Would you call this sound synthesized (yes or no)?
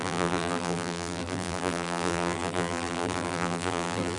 yes